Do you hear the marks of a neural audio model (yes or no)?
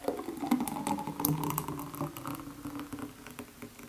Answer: no